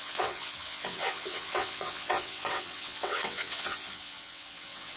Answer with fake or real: fake